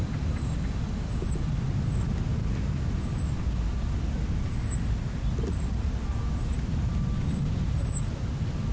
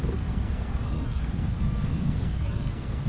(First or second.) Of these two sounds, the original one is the first